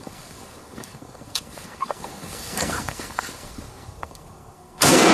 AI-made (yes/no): yes